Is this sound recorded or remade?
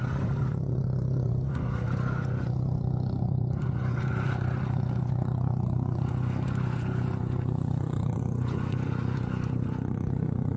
remade